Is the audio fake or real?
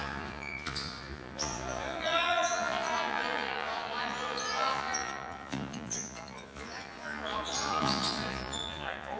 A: fake